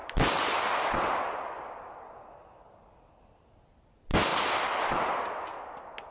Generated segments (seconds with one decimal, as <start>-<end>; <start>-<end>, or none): none